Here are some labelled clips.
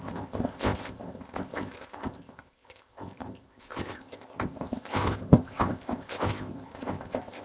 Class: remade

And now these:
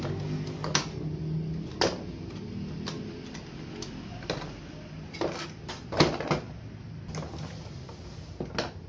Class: recorded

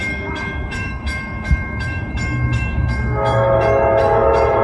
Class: remade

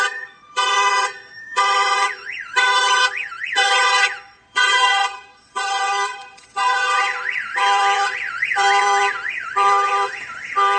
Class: remade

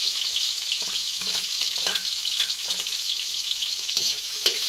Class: remade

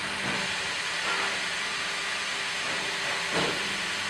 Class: recorded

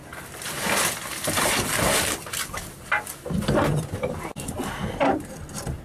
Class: recorded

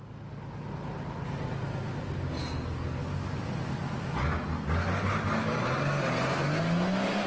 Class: recorded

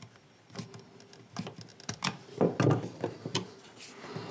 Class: recorded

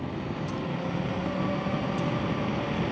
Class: recorded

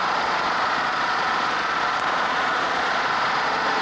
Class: remade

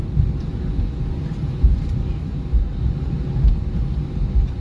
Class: recorded